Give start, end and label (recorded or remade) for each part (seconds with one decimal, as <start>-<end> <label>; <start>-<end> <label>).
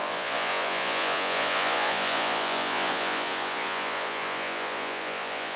0.0-5.6 remade